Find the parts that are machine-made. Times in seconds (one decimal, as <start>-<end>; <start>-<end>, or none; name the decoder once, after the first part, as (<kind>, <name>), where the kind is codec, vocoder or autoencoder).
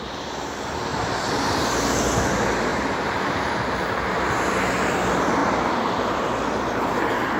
0.9-2.3 (vocoder, BigVGAN v2); 2.7-4.4; 5.4-6.2